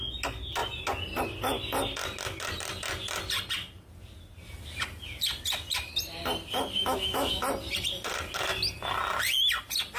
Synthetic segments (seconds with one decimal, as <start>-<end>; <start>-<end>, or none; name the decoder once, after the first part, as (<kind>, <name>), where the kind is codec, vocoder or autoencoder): 6.8-7.4 (autoencoder, DAC-VAE)